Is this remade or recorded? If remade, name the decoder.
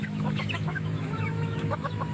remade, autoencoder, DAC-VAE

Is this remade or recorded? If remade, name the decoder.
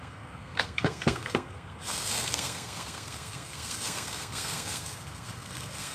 remade, codec, SNAC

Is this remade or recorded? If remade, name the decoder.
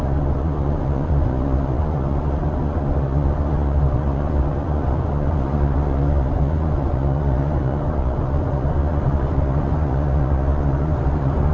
remade, vocoder, Vocos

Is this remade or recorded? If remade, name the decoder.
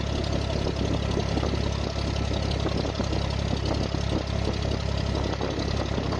recorded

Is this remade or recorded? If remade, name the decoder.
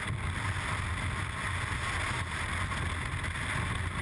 recorded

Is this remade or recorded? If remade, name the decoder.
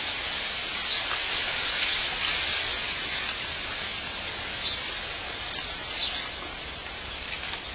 recorded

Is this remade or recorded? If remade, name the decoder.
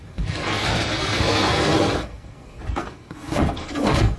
remade, codec, SNAC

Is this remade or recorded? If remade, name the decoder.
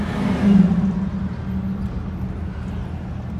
recorded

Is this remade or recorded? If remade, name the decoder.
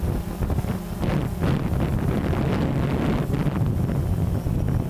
recorded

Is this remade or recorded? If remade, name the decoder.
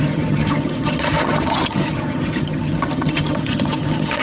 remade, vocoder, HiFi-GAN